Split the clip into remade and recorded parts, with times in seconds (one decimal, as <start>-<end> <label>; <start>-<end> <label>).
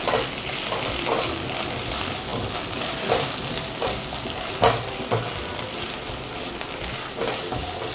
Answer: 0.0-7.9 recorded